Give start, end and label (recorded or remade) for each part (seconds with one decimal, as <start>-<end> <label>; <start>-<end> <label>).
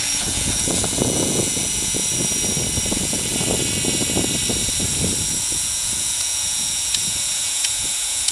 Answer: 0.0-2.0 remade; 2.0-2.9 recorded; 2.9-3.3 remade; 3.3-5.4 recorded; 5.4-8.3 remade